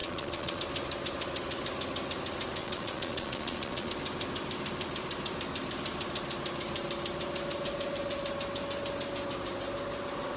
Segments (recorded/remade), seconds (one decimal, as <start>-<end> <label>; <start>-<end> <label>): 0.0-0.6 remade; 0.6-2.6 recorded; 2.6-3.9 remade; 3.9-10.4 recorded